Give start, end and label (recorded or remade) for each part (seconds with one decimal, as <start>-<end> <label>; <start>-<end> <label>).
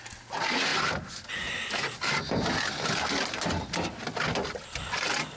0.0-5.4 recorded